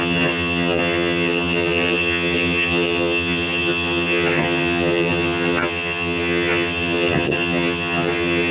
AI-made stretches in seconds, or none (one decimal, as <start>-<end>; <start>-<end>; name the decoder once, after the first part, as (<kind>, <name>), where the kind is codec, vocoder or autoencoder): 0.0-8.5 (vocoder, HiFi-GAN)